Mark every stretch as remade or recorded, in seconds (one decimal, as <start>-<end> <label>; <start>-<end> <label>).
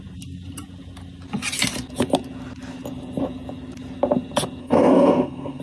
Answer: 0.0-4.6 recorded; 4.6-5.6 remade